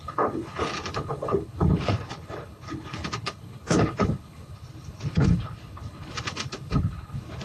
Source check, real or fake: fake